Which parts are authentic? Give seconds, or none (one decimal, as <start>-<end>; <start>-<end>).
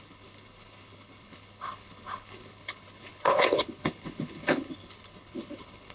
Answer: none